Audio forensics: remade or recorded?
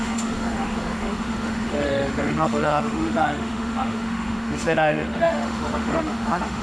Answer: remade